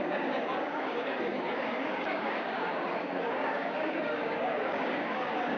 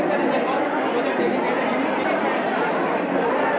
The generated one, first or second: first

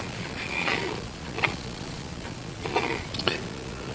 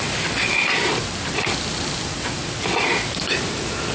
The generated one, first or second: first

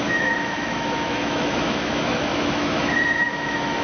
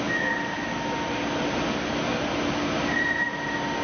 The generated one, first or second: first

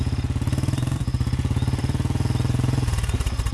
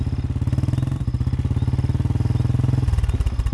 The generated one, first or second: first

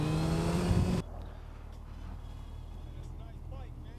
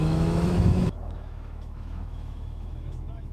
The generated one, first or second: second